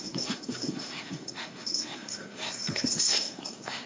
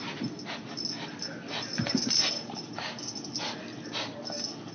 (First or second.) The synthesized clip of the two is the first